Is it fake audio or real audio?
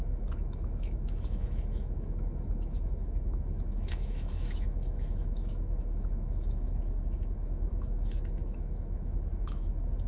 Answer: fake